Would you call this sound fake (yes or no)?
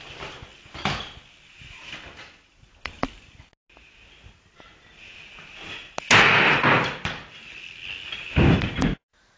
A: no